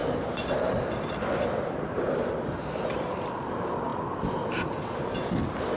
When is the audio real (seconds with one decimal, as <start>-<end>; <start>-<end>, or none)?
0.0-5.8